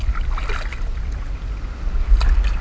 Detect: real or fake real